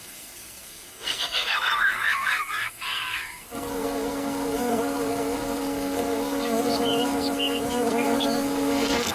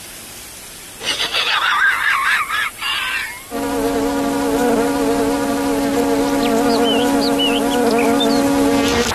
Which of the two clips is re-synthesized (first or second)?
first